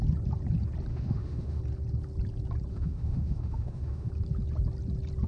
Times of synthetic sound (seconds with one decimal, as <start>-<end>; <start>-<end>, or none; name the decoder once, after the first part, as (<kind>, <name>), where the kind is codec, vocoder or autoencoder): 0.9-1.6 (autoencoder, DAC-VAE); 2.7-4.1